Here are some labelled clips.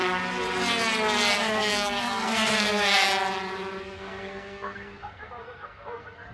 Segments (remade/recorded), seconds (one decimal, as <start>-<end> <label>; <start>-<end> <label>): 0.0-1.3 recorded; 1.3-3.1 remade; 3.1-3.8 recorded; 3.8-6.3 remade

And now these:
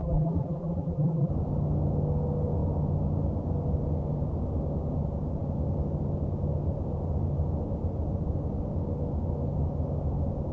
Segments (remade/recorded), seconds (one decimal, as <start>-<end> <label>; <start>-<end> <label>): 0.0-1.3 remade; 1.3-10.5 recorded

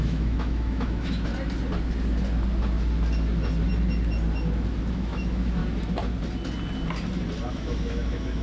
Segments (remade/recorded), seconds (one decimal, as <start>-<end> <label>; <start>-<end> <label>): 0.0-1.3 remade; 1.3-4.9 recorded; 4.9-5.6 remade; 5.6-7.5 recorded; 7.5-8.4 remade